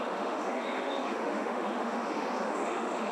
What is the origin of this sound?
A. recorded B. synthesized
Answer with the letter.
B